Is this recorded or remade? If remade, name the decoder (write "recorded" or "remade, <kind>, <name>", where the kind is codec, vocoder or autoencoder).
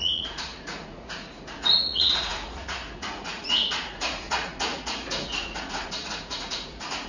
remade, vocoder, Vocos